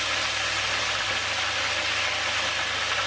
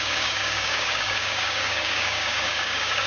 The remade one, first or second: second